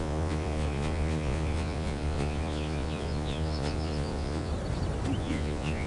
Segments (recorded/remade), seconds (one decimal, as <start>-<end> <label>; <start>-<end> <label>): 0.0-4.5 remade; 4.5-5.2 recorded; 5.2-5.9 remade